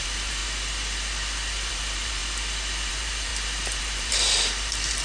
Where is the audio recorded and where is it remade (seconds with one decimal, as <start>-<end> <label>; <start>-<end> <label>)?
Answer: 0.0-0.4 remade; 0.4-1.7 recorded; 1.7-2.2 remade; 2.2-2.9 recorded; 2.9-3.3 remade; 3.3-3.8 recorded; 3.8-5.0 remade